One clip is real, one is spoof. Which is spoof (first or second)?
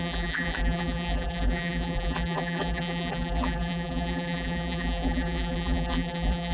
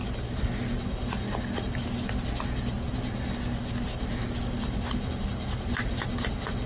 first